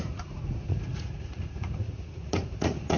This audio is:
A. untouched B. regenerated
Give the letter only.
B